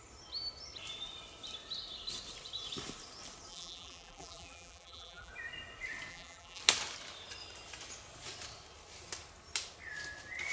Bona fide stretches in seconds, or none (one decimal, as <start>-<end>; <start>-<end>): 0.0-3.5; 5.3-6.1; 6.6-10.5